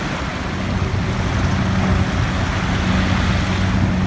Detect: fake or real real